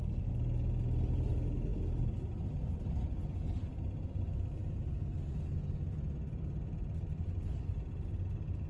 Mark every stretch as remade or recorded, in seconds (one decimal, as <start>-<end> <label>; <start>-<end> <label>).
0.0-8.7 recorded